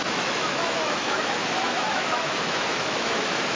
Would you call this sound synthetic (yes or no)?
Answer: yes